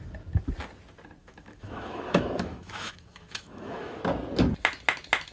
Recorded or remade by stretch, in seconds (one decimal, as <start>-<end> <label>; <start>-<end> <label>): 0.0-1.2 recorded; 1.2-4.0 remade; 4.0-5.3 recorded

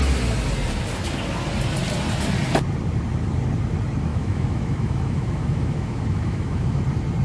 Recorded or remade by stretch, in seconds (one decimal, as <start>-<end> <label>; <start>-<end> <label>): 0.0-4.1 recorded; 4.1-6.8 remade; 6.8-7.2 recorded

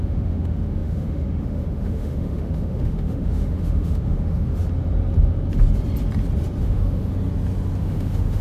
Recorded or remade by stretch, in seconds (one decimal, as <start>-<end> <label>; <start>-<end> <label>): 0.0-4.6 remade; 4.6-6.6 recorded; 6.6-7.1 remade; 7.1-7.8 recorded; 7.8-8.4 remade